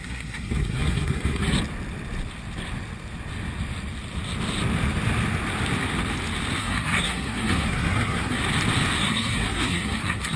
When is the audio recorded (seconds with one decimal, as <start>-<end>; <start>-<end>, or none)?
1.5-6.6; 8.4-9.0